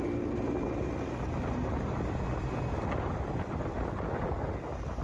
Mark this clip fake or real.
real